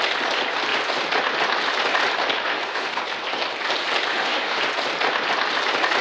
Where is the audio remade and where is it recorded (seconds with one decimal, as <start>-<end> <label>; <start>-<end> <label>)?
0.0-2.4 recorded; 2.4-3.0 remade; 3.0-4.1 recorded; 4.1-4.6 remade; 4.6-6.0 recorded